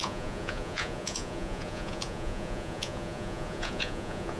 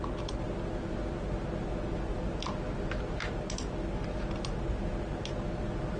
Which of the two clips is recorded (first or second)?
second